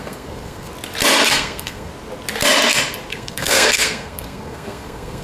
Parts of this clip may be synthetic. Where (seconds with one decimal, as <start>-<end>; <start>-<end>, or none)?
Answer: 0.0-0.7; 1.3-1.9; 3.1-5.2